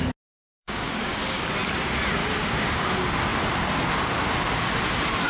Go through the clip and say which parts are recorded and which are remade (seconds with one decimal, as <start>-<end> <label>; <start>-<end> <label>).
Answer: 0.0-0.5 recorded; 0.5-1.5 remade; 1.5-2.2 recorded; 2.2-2.9 remade; 2.9-5.3 recorded